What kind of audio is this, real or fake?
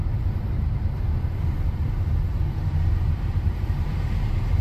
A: fake